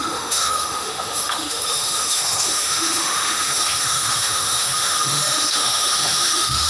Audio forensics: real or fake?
fake